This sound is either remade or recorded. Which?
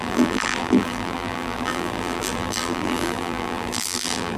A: remade